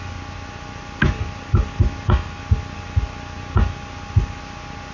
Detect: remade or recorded recorded